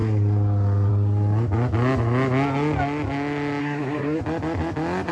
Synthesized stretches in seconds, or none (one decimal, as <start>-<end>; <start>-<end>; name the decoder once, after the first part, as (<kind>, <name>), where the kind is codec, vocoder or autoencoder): 3.6-4.2 (codec, SNAC)